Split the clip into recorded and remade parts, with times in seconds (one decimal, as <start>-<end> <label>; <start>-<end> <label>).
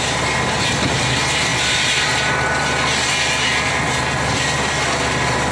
0.0-5.5 recorded